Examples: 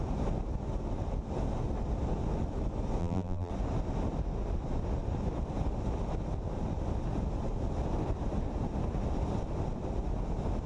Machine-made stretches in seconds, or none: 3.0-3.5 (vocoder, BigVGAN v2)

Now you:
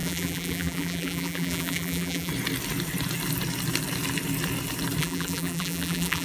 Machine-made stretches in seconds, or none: 0.0-2.3 (vocoder, BigVGAN v2); 5.0-6.2

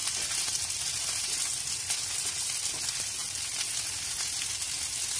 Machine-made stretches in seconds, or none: none

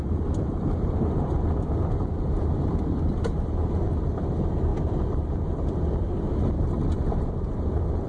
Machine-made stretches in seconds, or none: none